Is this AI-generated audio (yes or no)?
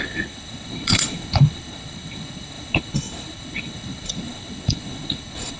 yes